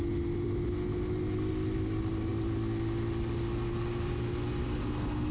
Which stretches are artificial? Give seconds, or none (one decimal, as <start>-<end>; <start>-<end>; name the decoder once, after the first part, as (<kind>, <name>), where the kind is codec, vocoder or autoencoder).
none